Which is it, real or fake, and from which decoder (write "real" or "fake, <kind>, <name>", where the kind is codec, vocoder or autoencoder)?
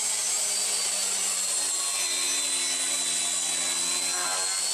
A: real